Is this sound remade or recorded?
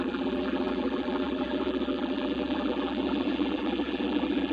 remade